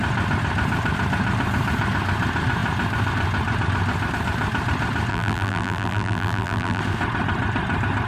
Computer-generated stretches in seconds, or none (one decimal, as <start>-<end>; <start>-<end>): 5.1-6.8